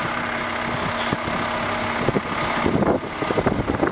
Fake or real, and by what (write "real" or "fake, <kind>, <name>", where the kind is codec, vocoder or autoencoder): real